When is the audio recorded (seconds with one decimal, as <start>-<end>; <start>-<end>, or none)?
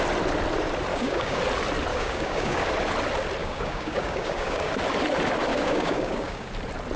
0.0-0.9; 1.4-1.9; 2.7-3.4; 4.7-5.5; 6.5-7.0